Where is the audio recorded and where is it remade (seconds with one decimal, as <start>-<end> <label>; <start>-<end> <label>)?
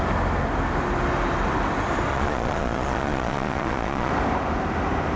0.0-2.1 recorded; 2.1-4.1 remade; 4.1-5.2 recorded